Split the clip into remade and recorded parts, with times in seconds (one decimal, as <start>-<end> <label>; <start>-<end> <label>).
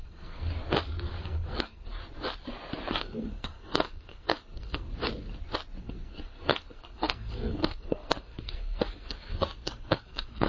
0.0-0.5 remade; 0.5-1.2 recorded; 1.2-2.0 remade; 2.0-2.9 recorded; 2.9-4.9 remade; 4.9-5.8 recorded; 5.8-10.5 remade